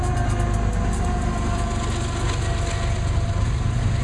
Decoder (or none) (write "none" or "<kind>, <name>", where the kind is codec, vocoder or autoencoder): none